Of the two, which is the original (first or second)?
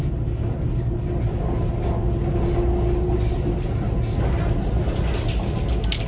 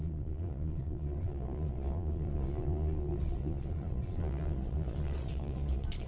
first